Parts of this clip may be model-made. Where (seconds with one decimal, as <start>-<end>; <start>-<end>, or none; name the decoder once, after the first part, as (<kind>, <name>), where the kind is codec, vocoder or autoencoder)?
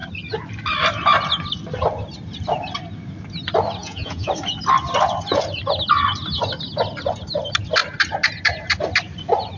3.8-4.3 (vocoder, Vocos)